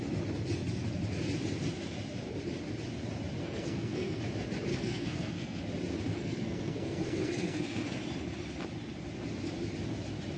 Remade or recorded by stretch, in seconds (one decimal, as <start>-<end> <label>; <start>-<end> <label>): 0.0-3.4 recorded; 3.4-4.2 remade; 4.2-4.7 recorded; 4.7-5.6 remade; 5.6-6.1 recorded; 6.1-8.0 remade; 8.0-10.4 recorded